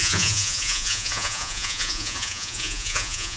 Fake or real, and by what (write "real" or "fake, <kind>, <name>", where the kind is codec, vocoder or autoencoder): fake, vocoder, Vocos